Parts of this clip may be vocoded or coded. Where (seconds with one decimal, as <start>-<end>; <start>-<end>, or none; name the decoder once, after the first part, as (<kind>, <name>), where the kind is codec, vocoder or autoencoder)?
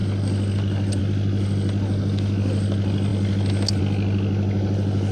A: none